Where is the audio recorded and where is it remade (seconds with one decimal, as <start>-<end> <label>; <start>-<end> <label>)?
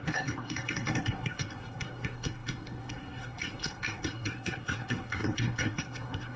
0.0-6.4 remade